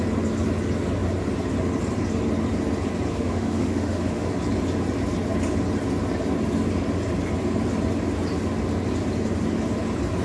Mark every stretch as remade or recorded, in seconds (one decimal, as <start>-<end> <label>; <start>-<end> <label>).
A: 0.0-3.1 recorded; 3.1-4.3 remade; 4.3-10.2 recorded

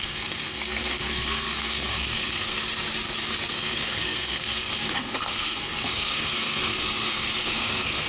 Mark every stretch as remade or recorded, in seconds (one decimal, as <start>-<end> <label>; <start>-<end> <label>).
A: 0.0-2.6 remade; 2.6-3.5 recorded; 3.5-8.1 remade